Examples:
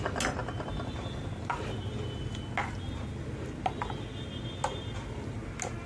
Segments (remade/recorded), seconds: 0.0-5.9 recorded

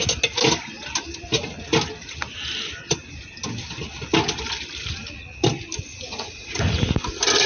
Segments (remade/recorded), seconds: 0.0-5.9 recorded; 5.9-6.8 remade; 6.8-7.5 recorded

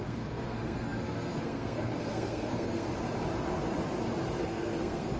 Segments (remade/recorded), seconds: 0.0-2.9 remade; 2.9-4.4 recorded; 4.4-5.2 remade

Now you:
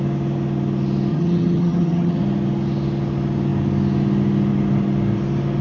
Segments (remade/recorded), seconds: 0.0-1.1 recorded; 1.1-2.2 remade; 2.2-5.6 recorded

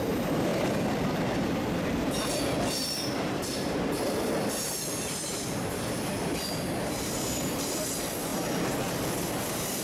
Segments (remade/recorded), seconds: 0.0-8.3 remade; 8.3-9.3 recorded; 9.3-9.8 remade

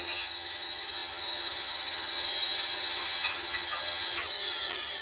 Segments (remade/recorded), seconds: 0.0-5.0 remade

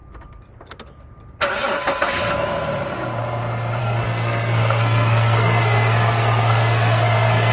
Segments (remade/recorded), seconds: 0.0-3.8 recorded; 3.8-7.5 remade

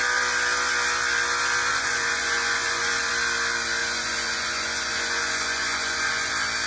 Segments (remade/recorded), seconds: 0.0-1.7 recorded; 1.7-3.1 remade; 3.1-3.8 recorded; 3.8-6.3 remade; 6.3-6.7 recorded